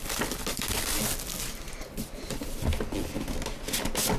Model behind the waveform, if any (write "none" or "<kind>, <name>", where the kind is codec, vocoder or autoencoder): none